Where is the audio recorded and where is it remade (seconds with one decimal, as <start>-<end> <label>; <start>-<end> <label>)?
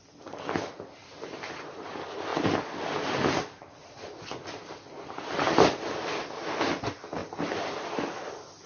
0.0-2.3 recorded; 2.3-6.5 remade; 6.5-7.2 recorded; 7.2-8.7 remade